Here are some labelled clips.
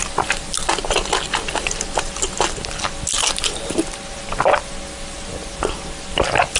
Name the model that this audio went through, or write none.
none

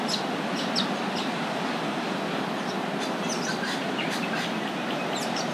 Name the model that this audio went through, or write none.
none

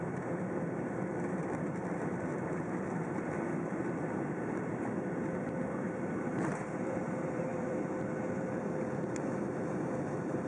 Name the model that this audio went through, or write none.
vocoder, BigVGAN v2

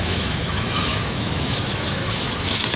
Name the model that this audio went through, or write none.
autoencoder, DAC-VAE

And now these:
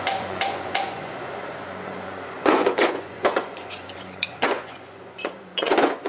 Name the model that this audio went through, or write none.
vocoder, Vocos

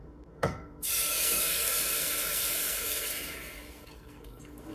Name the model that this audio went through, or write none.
codec, SNAC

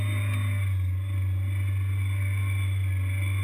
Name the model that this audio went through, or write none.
none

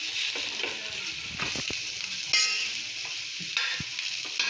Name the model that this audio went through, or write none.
none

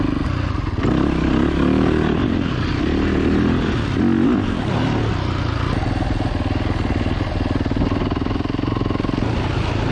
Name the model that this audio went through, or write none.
none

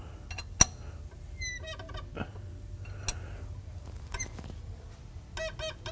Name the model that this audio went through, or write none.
none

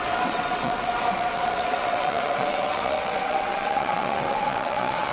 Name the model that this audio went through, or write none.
vocoder, WaveNeXt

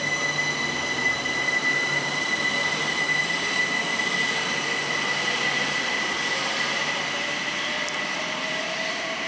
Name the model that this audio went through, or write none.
none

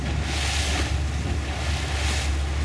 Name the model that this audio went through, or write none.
none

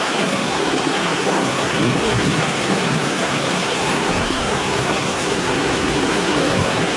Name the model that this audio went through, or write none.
codec, SNAC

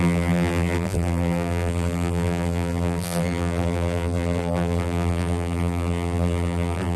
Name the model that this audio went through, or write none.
vocoder, BigVGAN v2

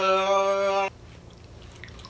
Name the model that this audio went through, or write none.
none